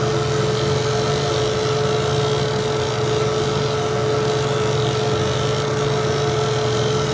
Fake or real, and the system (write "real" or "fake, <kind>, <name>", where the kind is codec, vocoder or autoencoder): real